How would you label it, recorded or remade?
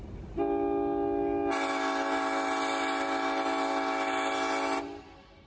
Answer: recorded